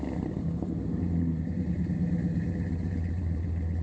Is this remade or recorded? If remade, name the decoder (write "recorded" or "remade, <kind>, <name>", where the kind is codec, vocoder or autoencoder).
remade, vocoder, BigVGAN v2